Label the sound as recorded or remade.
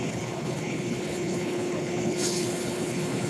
remade